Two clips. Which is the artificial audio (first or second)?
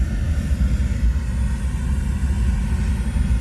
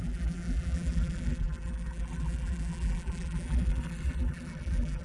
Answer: second